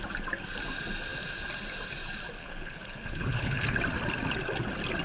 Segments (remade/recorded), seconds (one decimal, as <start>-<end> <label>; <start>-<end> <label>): 0.0-2.4 recorded; 2.4-3.8 remade; 3.8-5.0 recorded

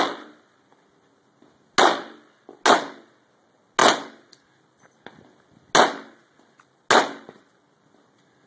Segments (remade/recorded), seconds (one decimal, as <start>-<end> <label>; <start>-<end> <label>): 0.0-8.5 recorded

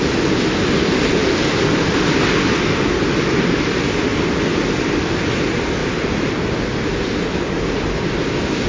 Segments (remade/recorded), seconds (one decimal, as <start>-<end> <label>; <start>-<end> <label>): 0.0-8.7 recorded

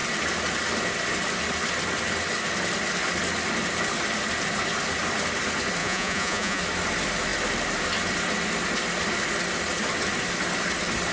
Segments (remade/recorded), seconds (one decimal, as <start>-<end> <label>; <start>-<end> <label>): 0.0-5.8 recorded; 5.8-6.6 remade; 6.6-11.1 recorded